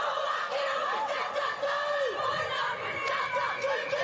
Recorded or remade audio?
recorded